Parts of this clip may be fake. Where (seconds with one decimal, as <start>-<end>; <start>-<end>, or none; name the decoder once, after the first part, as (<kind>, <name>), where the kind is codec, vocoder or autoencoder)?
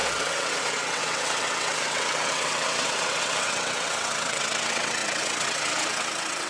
0.0-6.5 (vocoder, WaveNeXt)